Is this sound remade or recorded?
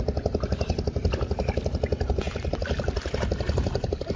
recorded